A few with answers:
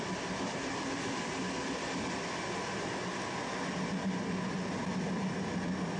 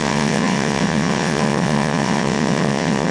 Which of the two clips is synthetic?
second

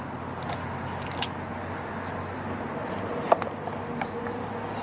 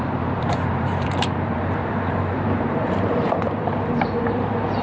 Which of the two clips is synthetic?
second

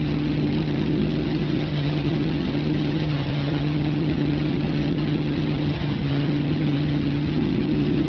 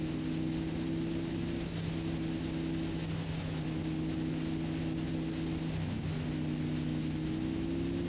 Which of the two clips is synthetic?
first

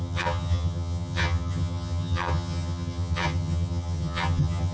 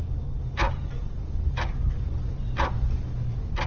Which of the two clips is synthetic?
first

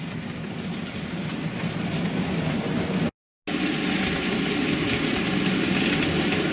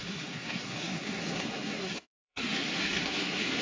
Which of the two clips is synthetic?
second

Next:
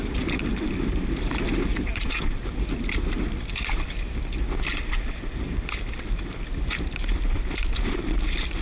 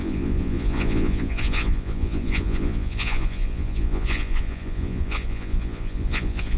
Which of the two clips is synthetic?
second